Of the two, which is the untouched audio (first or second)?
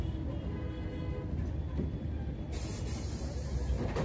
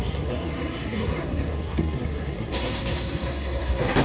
first